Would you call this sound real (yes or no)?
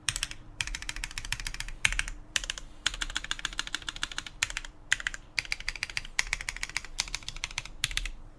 no